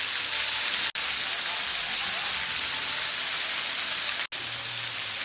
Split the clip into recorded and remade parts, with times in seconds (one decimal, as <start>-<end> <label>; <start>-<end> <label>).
0.0-1.7 recorded; 1.7-2.3 remade; 2.3-5.2 recorded